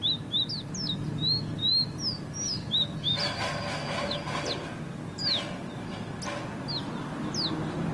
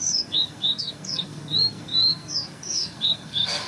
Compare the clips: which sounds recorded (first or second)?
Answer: first